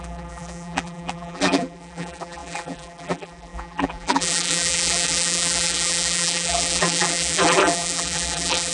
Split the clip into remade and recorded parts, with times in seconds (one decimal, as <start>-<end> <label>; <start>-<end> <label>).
0.0-8.7 remade